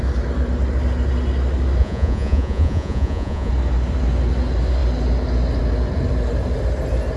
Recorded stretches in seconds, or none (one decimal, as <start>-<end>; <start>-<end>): 0.0-1.8; 3.5-7.2

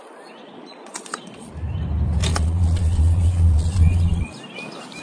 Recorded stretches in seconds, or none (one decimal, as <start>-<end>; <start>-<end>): 0.0-0.4; 1.5-2.3; 4.3-5.0

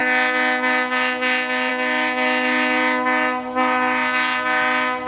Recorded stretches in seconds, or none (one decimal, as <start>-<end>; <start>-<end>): 0.0-5.1

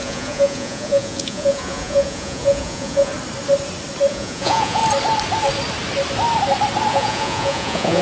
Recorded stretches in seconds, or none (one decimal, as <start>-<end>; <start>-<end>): 3.1-4.1; 4.8-6.9

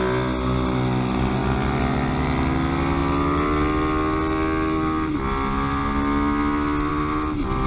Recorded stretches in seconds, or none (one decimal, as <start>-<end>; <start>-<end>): 0.0-7.7

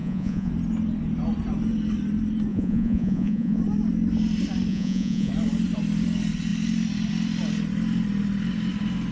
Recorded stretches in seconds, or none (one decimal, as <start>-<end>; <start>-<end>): 0.5-2.5; 3.6-4.7; 5.3-9.1

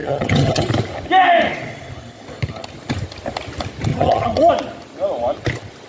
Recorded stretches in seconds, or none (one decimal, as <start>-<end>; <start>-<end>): 0.7-3.9; 4.5-5.9